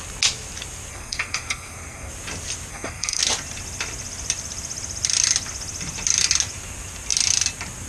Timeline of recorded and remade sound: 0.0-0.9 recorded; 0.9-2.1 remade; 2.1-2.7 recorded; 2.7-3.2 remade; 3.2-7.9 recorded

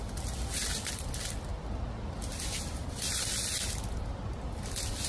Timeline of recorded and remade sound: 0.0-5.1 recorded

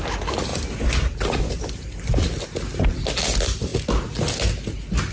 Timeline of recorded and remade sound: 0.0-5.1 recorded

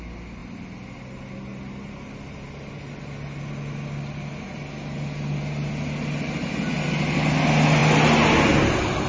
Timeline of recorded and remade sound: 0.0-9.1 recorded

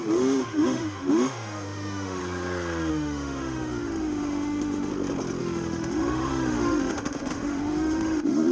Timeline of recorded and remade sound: 0.0-2.2 remade; 2.2-2.9 recorded; 2.9-4.9 remade; 4.9-5.4 recorded; 5.4-8.5 remade